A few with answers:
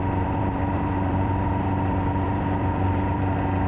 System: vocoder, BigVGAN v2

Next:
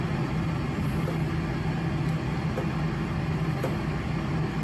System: none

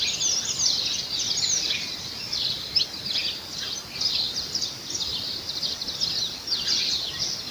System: none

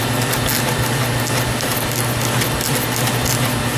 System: none